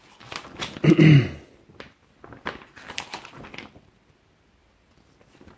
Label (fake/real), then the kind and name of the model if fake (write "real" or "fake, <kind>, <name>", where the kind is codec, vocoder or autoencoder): real